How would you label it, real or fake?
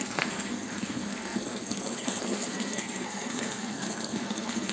fake